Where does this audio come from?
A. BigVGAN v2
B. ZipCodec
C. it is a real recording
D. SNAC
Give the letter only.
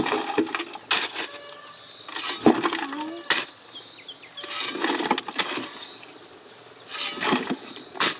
C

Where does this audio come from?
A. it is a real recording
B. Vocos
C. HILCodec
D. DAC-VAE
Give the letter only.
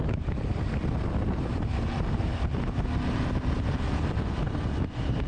A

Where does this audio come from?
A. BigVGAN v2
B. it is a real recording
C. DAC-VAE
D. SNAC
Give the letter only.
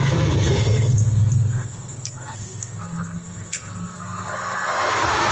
D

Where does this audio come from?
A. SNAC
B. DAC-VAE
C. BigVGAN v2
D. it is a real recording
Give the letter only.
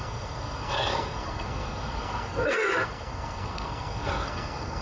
A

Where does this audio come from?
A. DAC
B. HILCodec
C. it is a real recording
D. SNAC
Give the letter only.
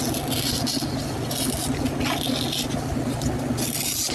C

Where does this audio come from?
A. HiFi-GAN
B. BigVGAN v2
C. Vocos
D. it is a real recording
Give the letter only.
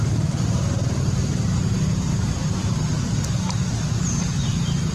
D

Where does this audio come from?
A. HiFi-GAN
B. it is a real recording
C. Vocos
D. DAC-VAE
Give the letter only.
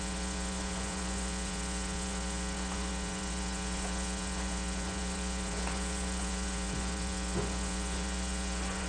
C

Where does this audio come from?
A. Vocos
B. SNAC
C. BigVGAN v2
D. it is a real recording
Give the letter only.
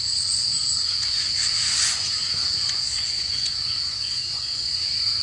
A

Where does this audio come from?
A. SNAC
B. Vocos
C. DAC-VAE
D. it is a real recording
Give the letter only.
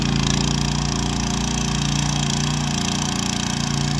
D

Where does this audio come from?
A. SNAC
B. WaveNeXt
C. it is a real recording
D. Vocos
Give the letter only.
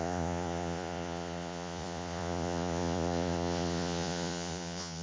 D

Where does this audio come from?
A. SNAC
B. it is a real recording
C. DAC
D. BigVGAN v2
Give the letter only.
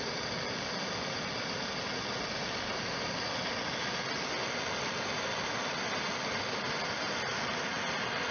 B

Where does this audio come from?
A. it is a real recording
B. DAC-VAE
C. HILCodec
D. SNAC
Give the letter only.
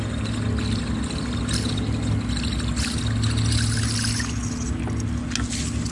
A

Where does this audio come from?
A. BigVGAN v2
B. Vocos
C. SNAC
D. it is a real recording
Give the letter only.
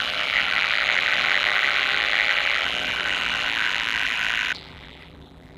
A